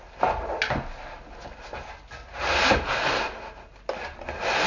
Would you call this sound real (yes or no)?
yes